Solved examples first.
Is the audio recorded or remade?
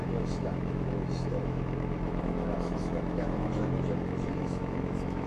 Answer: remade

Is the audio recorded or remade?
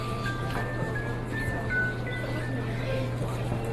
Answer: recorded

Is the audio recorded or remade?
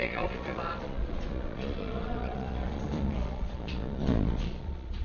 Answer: remade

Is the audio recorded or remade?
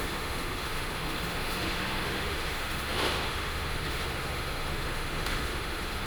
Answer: remade